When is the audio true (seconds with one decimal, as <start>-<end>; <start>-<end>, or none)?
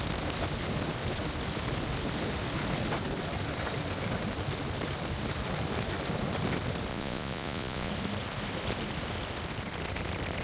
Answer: 0.0-6.9; 7.9-10.4